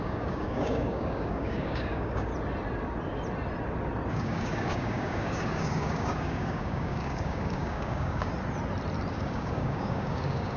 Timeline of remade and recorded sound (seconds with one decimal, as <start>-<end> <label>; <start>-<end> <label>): 0.0-2.3 remade; 2.3-4.1 recorded; 4.1-8.3 remade; 8.3-9.1 recorded; 9.1-10.6 remade